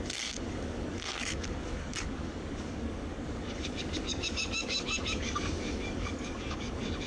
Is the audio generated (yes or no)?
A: yes